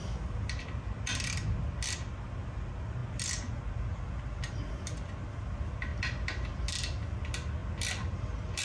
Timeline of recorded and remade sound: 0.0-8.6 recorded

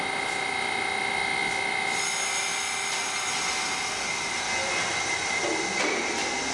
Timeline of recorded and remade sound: 0.0-6.5 recorded

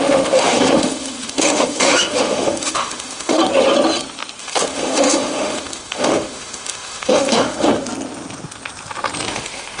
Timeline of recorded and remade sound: 0.0-3.4 remade; 3.4-4.4 recorded; 4.4-7.7 remade; 7.7-9.3 recorded; 9.3-9.8 remade

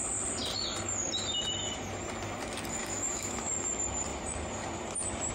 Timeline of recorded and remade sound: 0.0-2.8 recorded; 2.8-3.5 remade; 3.5-5.3 recorded

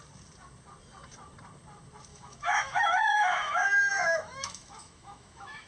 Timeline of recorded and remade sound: 0.0-2.1 recorded; 2.1-5.7 remade

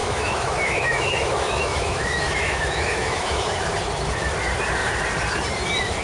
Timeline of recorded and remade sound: 0.0-3.6 remade; 3.6-6.0 recorded

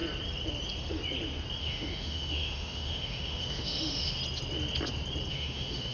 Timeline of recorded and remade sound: 0.0-1.6 recorded; 1.6-4.2 remade; 4.2-5.3 recorded; 5.3-5.9 remade

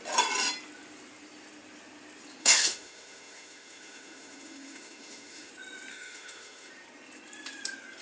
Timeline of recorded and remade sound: 0.0-2.4 recorded; 2.4-5.5 remade; 5.5-5.9 recorded; 5.9-6.7 remade; 6.7-8.0 recorded